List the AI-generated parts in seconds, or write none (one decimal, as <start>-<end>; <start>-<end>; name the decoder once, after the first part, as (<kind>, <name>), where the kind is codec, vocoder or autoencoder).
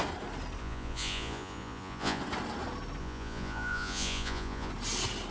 0.6-2.2 (vocoder, Vocos); 3.0-4.7